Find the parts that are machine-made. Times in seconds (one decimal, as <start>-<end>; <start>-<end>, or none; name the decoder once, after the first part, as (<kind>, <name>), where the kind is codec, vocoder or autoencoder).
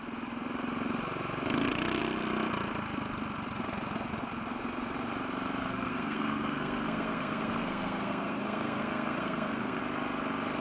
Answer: 5.6-9.8 (codec, SNAC)